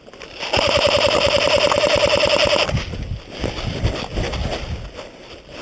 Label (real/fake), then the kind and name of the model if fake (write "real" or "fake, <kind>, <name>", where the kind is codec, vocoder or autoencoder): real